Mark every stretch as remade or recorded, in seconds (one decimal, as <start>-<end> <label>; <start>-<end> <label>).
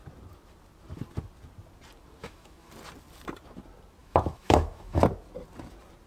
0.0-2.2 recorded; 2.2-2.7 remade; 2.7-4.0 recorded; 4.0-5.0 remade; 5.0-6.1 recorded